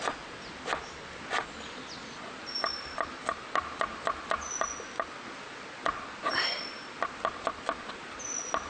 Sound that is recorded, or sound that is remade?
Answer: recorded